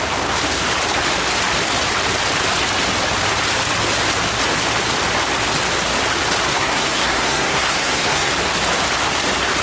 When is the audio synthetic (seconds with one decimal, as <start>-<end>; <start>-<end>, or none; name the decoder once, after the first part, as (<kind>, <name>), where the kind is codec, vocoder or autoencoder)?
6.5-8.3 (codec, SNAC)